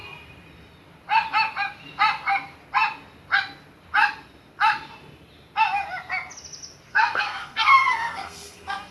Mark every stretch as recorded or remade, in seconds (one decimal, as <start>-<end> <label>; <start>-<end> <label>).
0.0-6.9 recorded; 6.9-8.9 remade